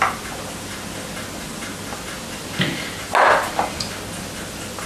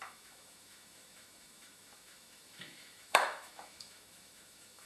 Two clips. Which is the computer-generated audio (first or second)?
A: second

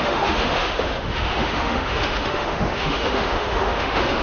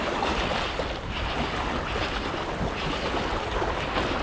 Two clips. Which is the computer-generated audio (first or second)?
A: first